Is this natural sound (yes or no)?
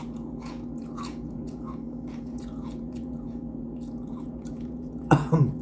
no